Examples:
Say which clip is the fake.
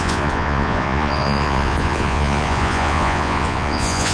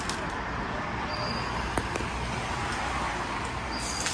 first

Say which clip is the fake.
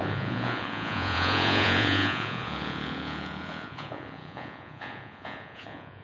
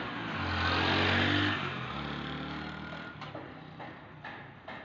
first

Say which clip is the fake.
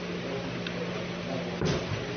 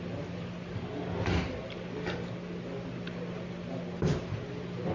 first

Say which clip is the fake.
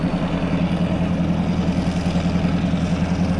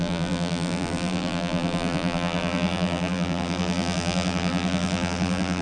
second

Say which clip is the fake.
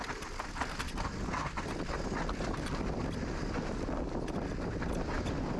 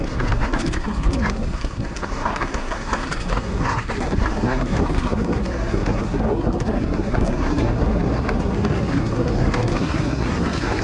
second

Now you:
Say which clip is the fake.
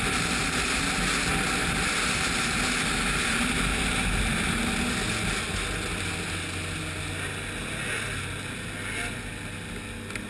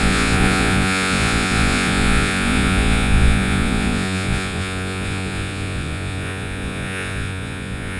second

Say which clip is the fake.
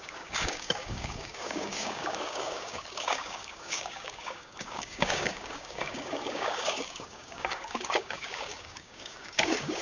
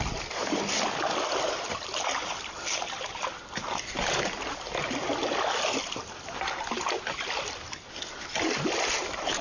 first